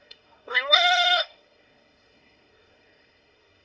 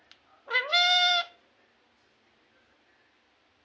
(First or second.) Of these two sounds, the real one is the second